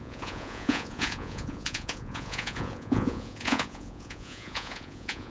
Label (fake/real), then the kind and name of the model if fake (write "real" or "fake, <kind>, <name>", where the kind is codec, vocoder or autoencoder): fake, vocoder, Vocos